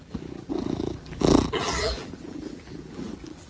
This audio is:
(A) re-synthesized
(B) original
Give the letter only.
A